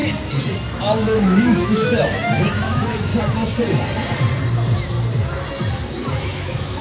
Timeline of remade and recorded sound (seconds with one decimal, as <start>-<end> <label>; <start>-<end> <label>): 0.0-0.8 recorded; 0.8-3.1 remade; 3.1-6.1 recorded; 6.1-6.8 remade